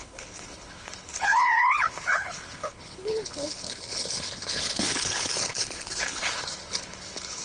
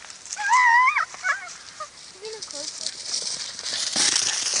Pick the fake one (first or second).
first